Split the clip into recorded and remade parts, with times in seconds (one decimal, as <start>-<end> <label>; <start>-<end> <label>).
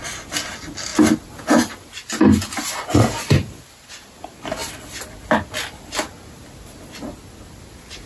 0.0-8.1 recorded